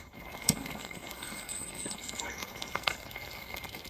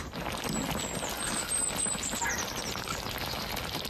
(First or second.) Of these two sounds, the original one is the second